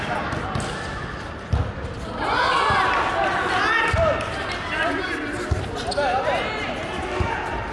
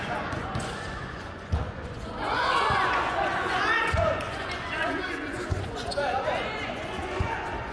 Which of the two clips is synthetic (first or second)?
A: second